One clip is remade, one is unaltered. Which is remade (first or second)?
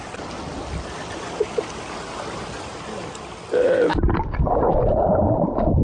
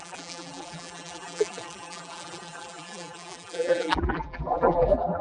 second